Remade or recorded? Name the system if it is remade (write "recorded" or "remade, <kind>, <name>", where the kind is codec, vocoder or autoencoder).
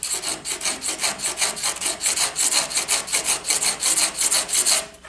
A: recorded